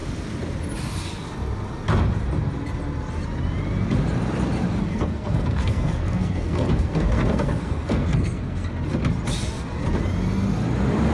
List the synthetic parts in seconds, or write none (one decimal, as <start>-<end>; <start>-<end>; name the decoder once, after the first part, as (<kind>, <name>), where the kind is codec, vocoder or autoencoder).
4.9-8.7 (codec, SNAC)